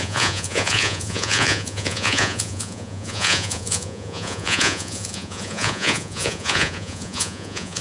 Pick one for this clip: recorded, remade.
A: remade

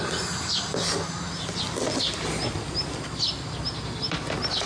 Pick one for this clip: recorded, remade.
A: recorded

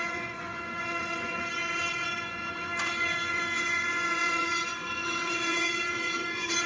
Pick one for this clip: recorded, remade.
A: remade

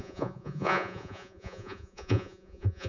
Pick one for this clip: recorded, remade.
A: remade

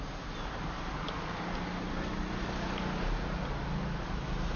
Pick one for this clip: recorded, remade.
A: recorded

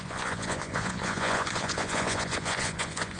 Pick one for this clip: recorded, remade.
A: remade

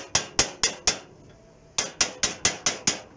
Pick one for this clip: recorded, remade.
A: recorded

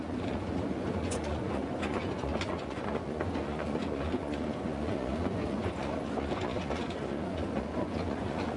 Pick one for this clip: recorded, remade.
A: remade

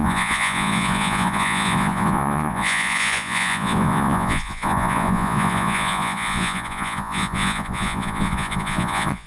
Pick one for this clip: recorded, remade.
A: remade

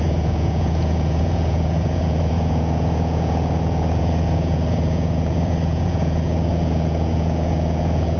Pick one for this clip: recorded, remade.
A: remade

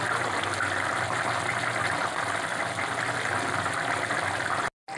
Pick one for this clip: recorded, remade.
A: recorded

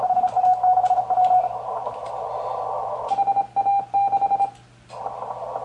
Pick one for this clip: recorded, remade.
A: recorded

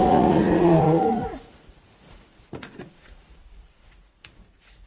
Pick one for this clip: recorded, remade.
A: remade